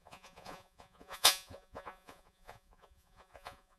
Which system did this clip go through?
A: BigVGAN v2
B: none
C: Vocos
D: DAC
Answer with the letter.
C